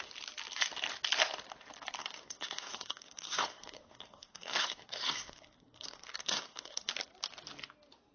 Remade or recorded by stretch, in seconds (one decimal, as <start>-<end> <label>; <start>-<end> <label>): 0.0-2.0 recorded; 2.0-6.9 remade; 6.9-8.1 recorded